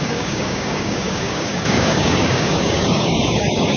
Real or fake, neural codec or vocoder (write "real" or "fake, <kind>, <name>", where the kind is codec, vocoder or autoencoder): fake, codec, DAC